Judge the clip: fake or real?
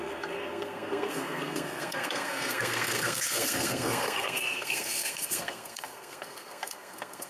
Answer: fake